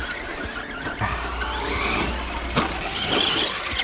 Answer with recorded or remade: recorded